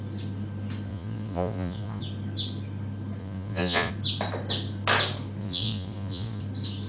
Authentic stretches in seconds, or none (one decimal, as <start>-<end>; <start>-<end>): 0.0-0.9; 2.0-3.2; 3.9-5.4; 6.4-6.9